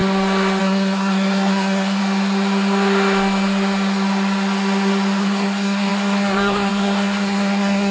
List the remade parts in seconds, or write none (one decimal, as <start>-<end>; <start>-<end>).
0.6-2.0; 5.2-7.9